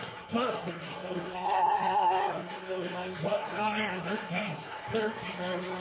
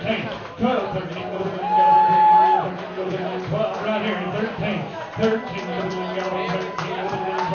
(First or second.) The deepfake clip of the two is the first